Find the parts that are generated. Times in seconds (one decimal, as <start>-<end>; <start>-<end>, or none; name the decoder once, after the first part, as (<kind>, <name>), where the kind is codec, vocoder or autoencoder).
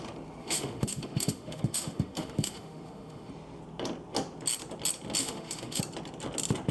0.4-3.3 (autoencoder, DAC-VAE); 5.2-5.8